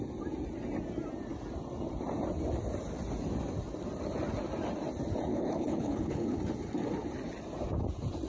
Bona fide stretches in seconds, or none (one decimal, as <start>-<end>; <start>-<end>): 0.0-5.3; 6.4-8.3